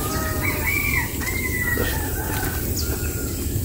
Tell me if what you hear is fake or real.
real